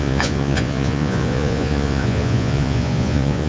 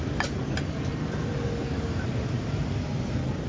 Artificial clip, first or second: first